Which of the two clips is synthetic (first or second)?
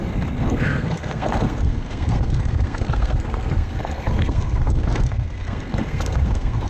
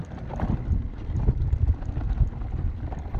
first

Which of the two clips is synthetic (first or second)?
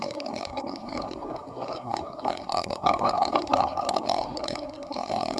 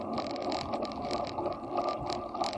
first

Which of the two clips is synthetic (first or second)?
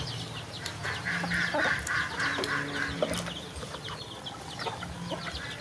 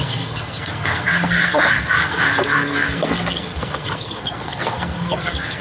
second